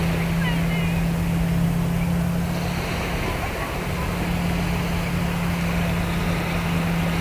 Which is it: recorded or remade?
recorded